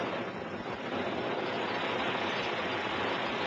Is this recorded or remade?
recorded